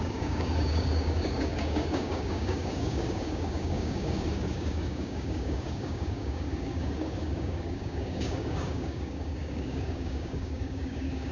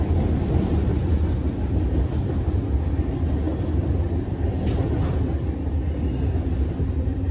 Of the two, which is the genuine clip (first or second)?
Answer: second